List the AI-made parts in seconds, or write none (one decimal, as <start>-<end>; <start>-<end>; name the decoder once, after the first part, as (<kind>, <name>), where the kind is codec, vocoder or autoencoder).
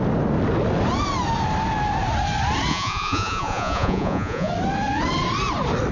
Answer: 2.7-4.5 (vocoder, Vocos)